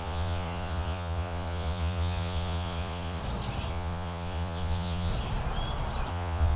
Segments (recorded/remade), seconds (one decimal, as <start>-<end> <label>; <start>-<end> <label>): 0.0-3.2 remade; 3.2-3.7 recorded; 3.7-5.1 remade; 5.1-6.1 recorded; 6.1-6.6 remade